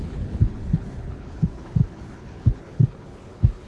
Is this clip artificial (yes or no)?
yes